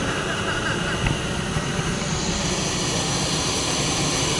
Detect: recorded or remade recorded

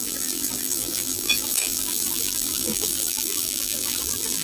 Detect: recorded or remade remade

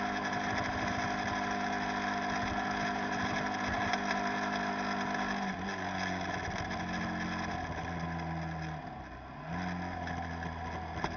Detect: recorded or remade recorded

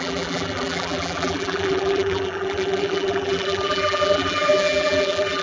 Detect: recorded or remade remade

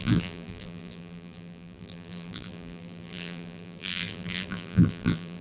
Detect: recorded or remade remade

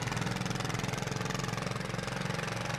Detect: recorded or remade recorded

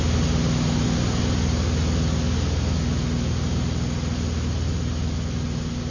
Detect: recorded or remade recorded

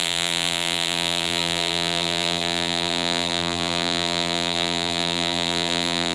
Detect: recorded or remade remade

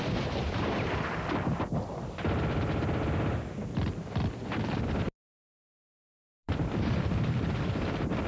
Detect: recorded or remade remade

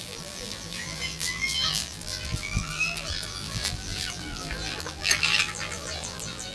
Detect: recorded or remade remade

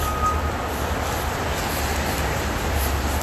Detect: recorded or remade recorded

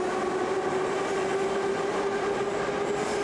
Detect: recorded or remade recorded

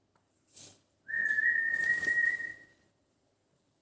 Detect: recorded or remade recorded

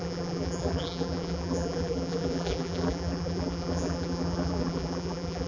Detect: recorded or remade remade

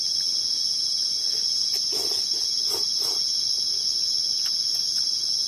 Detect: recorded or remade recorded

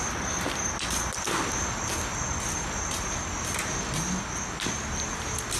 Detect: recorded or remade recorded